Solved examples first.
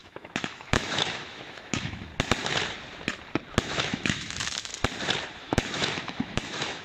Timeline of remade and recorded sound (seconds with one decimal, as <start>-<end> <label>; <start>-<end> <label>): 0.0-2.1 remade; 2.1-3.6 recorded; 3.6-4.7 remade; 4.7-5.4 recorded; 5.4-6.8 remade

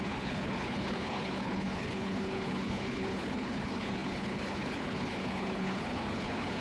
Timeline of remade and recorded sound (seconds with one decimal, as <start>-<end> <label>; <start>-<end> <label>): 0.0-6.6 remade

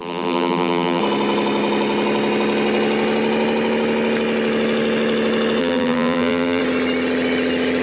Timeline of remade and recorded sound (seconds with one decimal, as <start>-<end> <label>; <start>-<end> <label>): 0.0-1.0 remade; 1.0-5.6 recorded; 5.6-6.6 remade; 6.6-7.8 recorded

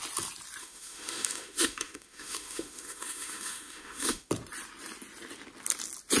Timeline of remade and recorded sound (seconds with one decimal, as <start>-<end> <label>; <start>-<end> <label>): 0.0-0.6 recorded; 0.6-4.3 remade; 4.3-6.2 recorded